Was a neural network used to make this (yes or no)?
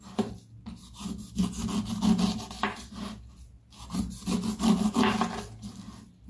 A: no